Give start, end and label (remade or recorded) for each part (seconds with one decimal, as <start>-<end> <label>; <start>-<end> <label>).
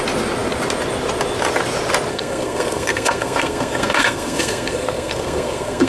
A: 0.0-2.1 recorded; 2.1-5.9 remade